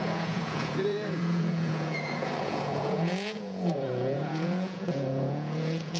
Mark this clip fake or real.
fake